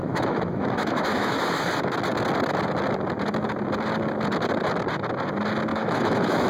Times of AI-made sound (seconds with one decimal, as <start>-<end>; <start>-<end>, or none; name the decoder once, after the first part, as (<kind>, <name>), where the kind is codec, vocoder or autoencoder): 0.0-1.7 (autoencoder, DAC-VAE); 5.7-6.5